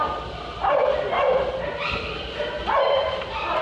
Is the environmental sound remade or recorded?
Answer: recorded